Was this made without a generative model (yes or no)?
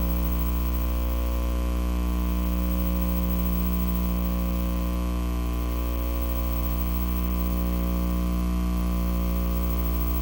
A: yes